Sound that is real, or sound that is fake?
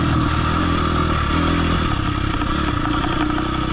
real